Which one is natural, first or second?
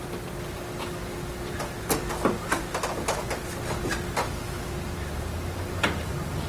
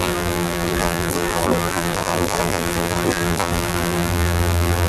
first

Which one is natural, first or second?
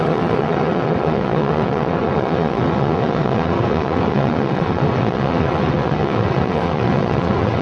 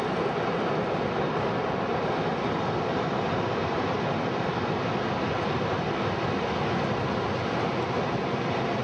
second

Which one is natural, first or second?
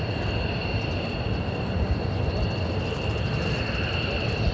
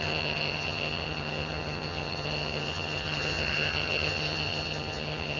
first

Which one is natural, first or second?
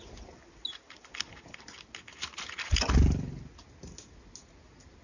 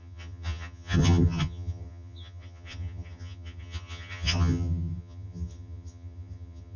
first